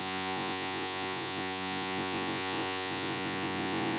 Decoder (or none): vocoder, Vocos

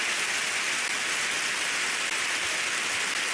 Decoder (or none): none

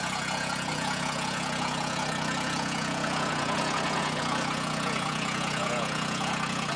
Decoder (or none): vocoder, Vocos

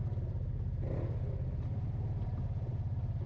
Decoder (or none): none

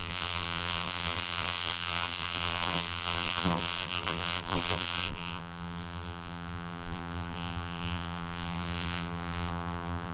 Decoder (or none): vocoder, BigVGAN v2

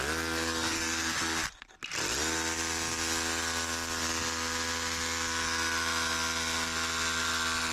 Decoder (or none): none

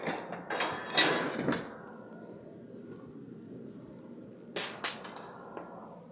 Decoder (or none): none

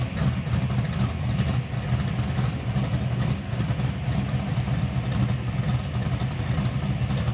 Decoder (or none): none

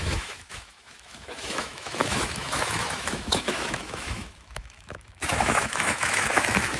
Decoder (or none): autoencoder, DAC-VAE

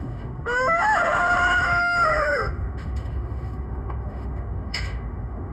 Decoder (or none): autoencoder, DAC-VAE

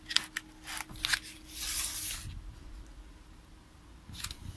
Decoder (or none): none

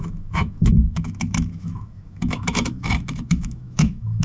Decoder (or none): autoencoder, DAC-VAE